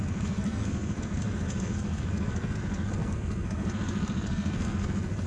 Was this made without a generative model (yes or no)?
no